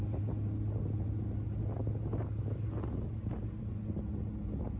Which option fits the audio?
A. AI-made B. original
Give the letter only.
B